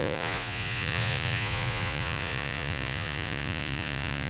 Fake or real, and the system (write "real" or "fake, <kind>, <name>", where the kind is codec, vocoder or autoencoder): fake, vocoder, Vocos